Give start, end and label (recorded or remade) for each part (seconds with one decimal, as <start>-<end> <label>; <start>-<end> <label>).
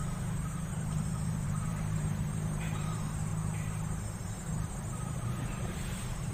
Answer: 0.0-0.7 recorded; 0.7-3.3 remade; 3.3-4.2 recorded; 4.2-6.3 remade